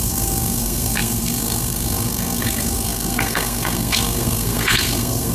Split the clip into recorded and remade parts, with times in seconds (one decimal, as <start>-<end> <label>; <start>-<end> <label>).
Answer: 0.0-5.3 remade